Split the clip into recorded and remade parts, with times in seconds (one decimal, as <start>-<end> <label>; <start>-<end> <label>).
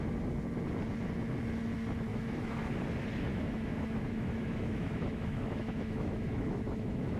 0.0-2.1 recorded; 2.1-2.7 remade; 2.7-3.3 recorded; 3.3-7.2 remade